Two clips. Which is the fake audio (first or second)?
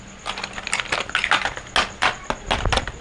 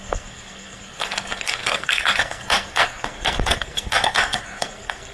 second